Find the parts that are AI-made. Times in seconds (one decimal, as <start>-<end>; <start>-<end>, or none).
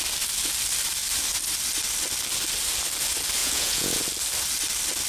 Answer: 3.4-4.0